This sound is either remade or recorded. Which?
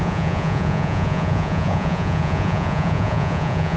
remade